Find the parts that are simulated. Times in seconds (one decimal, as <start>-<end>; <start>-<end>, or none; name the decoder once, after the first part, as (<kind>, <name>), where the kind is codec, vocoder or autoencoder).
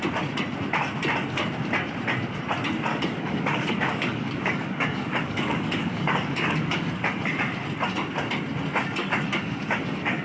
2.9-6.9 (codec, DAC); 9.0-10.2